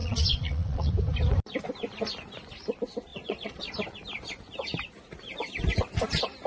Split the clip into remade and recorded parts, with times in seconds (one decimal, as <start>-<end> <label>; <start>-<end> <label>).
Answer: 0.0-0.9 remade; 0.9-3.1 recorded; 3.1-3.6 remade; 3.6-6.5 recorded

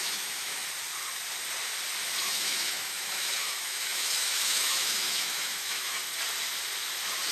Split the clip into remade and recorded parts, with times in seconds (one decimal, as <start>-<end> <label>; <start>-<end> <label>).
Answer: 0.0-0.6 remade; 0.6-2.2 recorded; 2.2-6.0 remade; 6.0-7.3 recorded

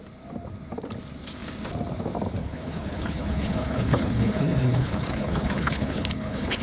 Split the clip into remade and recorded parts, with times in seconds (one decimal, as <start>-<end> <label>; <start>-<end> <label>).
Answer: 0.0-2.4 recorded; 2.4-6.6 remade

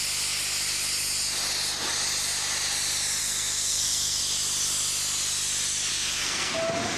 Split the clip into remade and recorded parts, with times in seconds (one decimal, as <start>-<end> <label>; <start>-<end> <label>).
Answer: 0.0-3.2 recorded; 3.2-4.2 remade; 4.2-5.9 recorded; 5.9-6.5 remade; 6.5-7.0 recorded

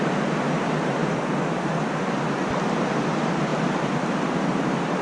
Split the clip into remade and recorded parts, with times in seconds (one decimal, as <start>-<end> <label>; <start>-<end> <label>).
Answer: 0.0-1.0 remade; 1.0-3.1 recorded; 3.1-3.5 remade; 3.5-5.0 recorded

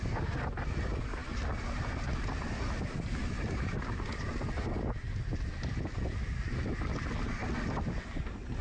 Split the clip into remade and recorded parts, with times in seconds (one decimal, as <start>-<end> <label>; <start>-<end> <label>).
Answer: 0.0-8.6 recorded

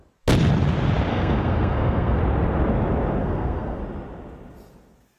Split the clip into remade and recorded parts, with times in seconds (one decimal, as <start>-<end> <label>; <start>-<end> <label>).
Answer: 0.0-1.1 recorded; 1.1-2.2 remade; 2.2-3.2 recorded; 3.2-3.8 remade; 3.8-5.2 recorded

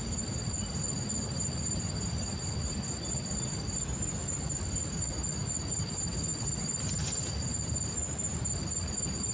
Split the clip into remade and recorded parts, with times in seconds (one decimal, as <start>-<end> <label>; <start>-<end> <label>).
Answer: 0.0-9.3 recorded